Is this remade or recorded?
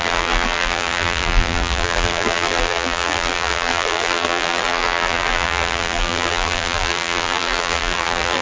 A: remade